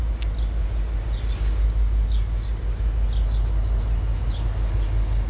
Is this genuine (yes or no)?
yes